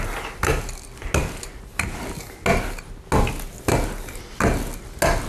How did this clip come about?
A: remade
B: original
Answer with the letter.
B